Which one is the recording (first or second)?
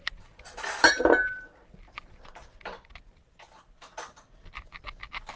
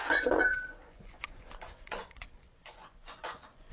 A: first